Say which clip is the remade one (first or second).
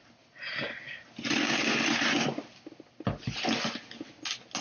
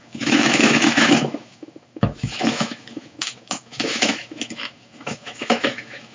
second